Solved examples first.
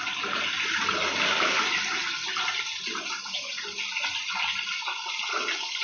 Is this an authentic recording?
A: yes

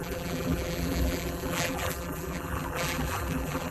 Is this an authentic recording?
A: no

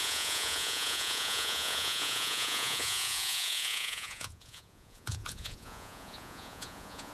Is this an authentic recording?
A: no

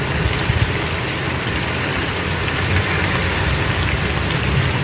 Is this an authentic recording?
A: yes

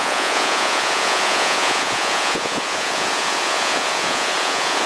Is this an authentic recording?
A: no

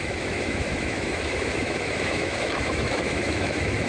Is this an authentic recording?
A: no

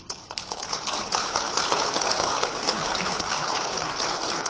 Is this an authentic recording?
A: no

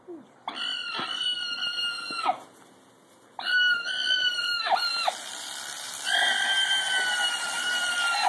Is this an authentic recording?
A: yes